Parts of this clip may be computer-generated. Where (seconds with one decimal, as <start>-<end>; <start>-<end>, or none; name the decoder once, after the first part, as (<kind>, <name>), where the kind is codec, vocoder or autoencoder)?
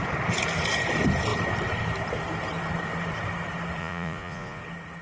3.8-4.6 (vocoder, Vocos)